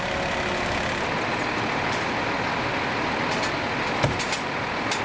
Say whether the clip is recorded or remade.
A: recorded